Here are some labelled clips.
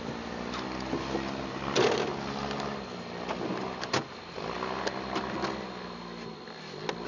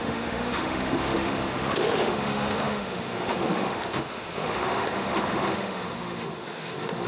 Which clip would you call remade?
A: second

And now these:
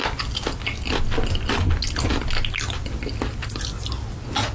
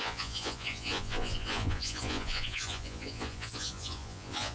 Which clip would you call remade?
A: second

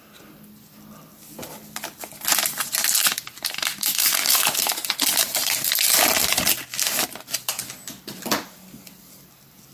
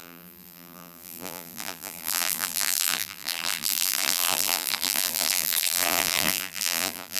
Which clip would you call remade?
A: second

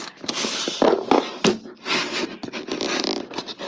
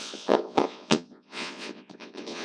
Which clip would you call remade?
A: second